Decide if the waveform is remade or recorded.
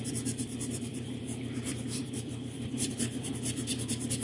remade